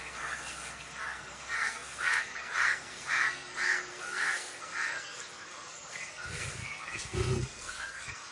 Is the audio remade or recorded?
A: remade